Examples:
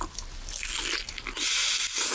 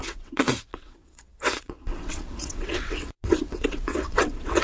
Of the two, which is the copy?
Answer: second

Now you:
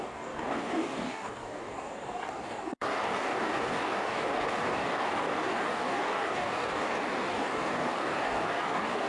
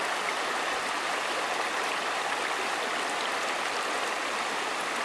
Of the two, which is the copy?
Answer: first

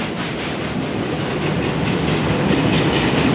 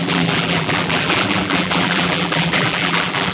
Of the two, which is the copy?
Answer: second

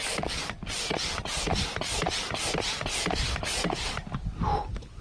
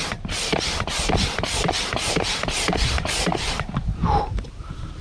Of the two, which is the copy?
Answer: second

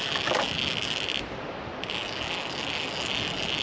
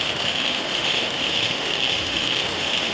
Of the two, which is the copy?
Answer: second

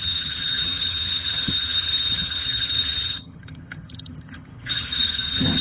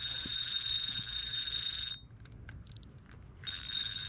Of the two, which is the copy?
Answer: first